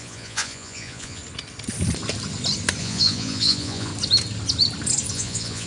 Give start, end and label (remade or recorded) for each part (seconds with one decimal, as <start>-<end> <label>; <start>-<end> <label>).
0.0-1.2 remade; 1.2-2.8 recorded; 2.8-3.9 remade; 3.9-5.1 recorded; 5.1-5.7 remade